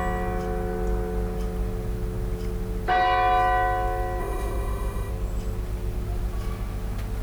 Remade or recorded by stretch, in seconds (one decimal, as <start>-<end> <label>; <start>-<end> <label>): 0.0-4.2 recorded; 4.2-5.1 remade; 5.1-7.2 recorded

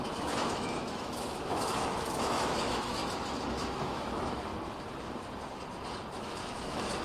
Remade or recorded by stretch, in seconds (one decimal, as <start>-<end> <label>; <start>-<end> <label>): 0.0-3.0 remade; 3.0-3.5 recorded; 3.5-4.5 remade; 4.5-6.2 recorded; 6.2-7.0 remade